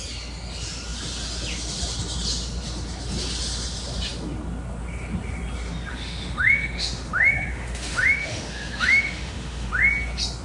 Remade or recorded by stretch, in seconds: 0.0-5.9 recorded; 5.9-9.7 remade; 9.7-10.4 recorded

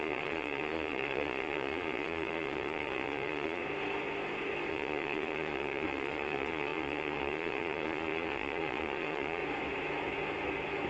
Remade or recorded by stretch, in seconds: 0.0-3.6 remade; 3.6-4.7 recorded; 4.7-9.4 remade; 9.4-10.9 recorded

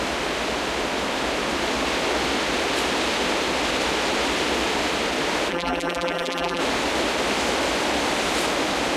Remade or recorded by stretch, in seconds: 0.0-5.5 recorded; 5.5-6.6 remade; 6.6-9.0 recorded

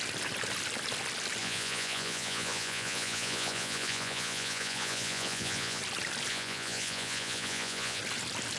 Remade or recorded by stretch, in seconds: 0.0-1.4 recorded; 1.4-5.8 remade; 5.8-6.3 recorded; 6.3-8.0 remade; 8.0-8.6 recorded

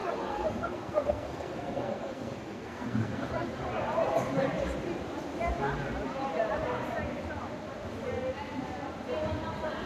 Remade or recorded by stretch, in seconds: 0.0-3.3 remade; 3.3-9.9 recorded

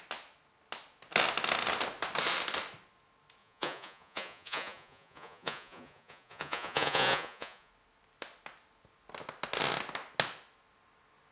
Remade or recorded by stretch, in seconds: 0.0-3.4 recorded; 3.4-7.7 remade; 7.7-11.3 recorded

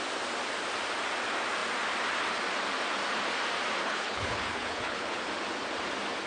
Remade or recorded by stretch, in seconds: 0.0-3.8 recorded; 3.8-5.3 remade; 5.3-6.3 recorded